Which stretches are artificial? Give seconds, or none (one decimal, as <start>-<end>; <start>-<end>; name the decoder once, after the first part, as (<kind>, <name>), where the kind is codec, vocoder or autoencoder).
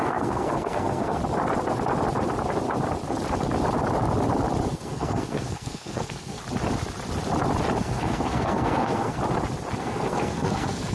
0.0-1.2 (codec, SNAC); 4.7-6.4; 7.8-9.2; 9.8-10.9